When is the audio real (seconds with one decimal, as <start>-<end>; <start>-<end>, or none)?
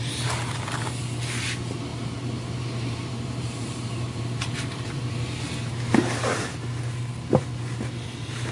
0.0-1.9; 5.4-8.5